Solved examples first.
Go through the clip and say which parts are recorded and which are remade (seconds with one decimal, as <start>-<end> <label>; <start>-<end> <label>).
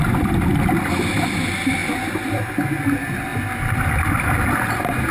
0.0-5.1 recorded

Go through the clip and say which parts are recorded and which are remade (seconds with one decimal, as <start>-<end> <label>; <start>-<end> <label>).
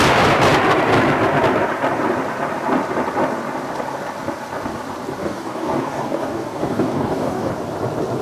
0.0-5.2 recorded; 5.2-7.5 remade; 7.5-8.2 recorded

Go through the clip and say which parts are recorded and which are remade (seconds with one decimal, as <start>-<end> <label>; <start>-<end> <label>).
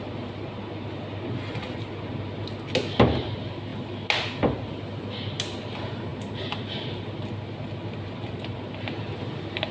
0.0-9.7 recorded